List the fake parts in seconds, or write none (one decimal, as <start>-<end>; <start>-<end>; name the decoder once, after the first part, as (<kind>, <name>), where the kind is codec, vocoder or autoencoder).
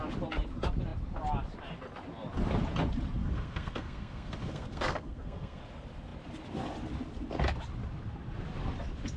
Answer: 3.2-5.6 (codec, SNAC)